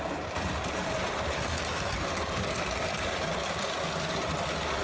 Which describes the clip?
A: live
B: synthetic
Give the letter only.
A